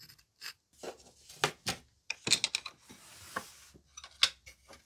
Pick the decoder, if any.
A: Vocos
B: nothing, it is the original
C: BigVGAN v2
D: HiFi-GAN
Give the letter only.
B